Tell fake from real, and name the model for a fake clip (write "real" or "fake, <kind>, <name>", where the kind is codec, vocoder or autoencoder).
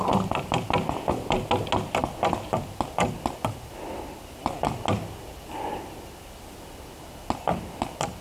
real